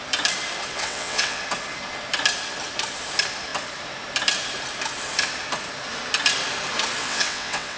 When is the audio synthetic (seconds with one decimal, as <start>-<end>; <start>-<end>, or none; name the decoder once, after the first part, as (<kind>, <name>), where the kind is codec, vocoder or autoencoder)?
0.7-1.4 (vocoder, WaveNeXt); 7.0-7.8